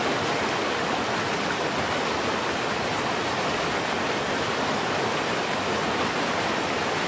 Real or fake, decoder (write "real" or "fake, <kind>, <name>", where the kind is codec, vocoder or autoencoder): fake, vocoder, BigVGAN v2